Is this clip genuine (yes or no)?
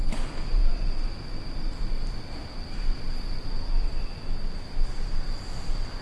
yes